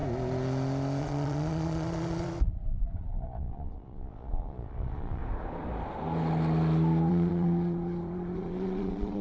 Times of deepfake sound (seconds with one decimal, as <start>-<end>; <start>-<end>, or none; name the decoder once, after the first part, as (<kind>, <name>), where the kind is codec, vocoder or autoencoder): 1.0-5.2 (vocoder, Vocos); 7.1-9.2